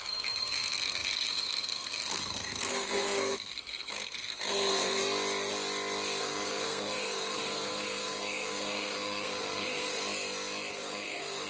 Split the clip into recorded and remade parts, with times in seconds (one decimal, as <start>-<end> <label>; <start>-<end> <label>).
0.0-5.0 remade; 5.0-6.2 recorded; 6.2-10.0 remade; 10.0-10.7 recorded; 10.7-11.5 remade

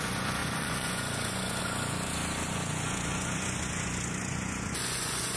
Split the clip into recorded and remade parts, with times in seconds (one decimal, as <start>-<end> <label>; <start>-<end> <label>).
0.0-5.4 remade

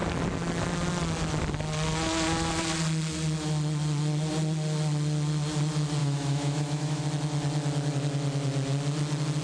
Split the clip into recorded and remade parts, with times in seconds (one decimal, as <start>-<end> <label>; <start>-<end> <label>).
0.0-6.0 recorded; 6.0-7.0 remade; 7.0-9.4 recorded

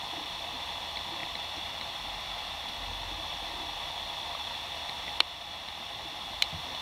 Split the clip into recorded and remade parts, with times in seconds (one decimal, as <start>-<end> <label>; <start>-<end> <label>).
0.0-6.8 recorded

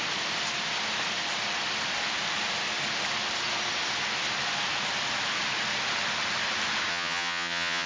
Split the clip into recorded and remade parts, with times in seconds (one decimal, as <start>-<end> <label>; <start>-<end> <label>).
0.0-6.9 recorded; 6.9-7.9 remade